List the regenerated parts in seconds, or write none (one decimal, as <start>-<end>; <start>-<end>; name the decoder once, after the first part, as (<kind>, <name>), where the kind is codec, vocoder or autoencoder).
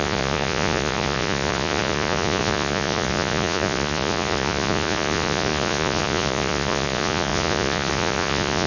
0.0-8.7 (vocoder, Vocos)